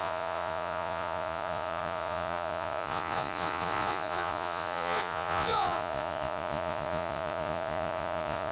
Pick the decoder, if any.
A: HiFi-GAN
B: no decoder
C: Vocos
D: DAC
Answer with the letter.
C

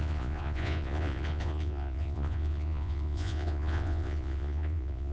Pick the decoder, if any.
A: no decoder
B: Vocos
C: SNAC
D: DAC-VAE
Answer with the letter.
B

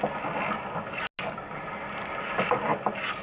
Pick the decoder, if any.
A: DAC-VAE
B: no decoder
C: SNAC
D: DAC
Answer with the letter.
B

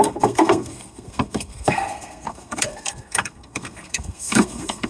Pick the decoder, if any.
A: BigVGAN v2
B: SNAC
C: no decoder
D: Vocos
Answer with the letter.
B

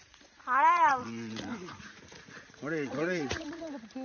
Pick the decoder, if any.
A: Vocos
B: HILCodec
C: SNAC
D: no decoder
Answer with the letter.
A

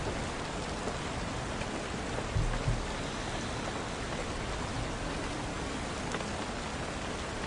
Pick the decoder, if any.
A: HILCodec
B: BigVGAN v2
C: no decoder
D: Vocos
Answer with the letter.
C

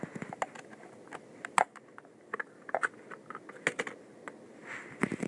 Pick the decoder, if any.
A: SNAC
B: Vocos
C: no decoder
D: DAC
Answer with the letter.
C